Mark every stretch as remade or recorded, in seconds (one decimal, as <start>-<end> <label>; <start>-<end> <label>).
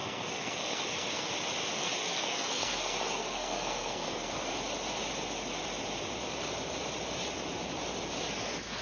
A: 0.0-1.3 remade; 1.3-1.8 recorded; 1.8-4.5 remade; 4.5-8.8 recorded